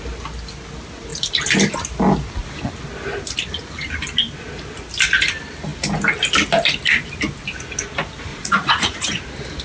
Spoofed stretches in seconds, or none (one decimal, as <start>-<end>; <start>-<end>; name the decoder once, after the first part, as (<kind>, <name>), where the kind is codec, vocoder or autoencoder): 8.3-9.2 (vocoder, Vocos)